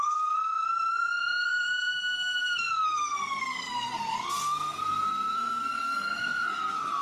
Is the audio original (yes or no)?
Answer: no